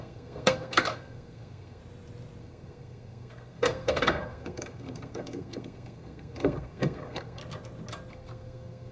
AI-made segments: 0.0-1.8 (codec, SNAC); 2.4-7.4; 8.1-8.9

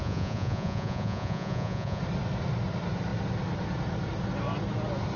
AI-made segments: 0.0-2.0 (vocoder, Vocos)

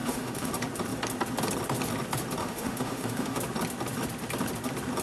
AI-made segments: 0.0-0.5 (autoencoder, DAC-VAE); 2.4-3.4

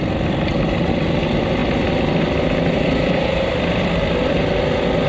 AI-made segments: 1.6-4.3 (vocoder, BigVGAN v2)

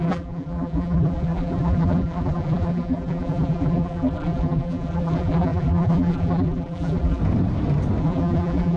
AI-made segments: 0.0-7.2 (vocoder, BigVGAN v2); 8.0-8.8

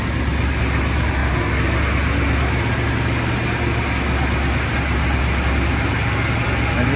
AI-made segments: none

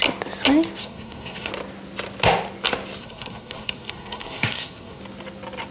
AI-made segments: 0.8-1.5 (codec, SNAC); 3.0-5.0